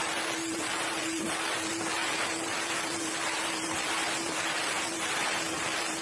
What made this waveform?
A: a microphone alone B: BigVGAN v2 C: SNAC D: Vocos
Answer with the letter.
B